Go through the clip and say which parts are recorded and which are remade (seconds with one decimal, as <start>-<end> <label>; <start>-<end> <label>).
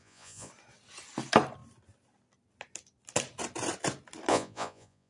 0.0-0.5 remade; 0.5-4.3 recorded; 4.3-5.1 remade